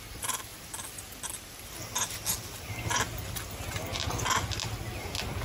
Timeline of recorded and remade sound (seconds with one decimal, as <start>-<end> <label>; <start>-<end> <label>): 0.0-5.4 recorded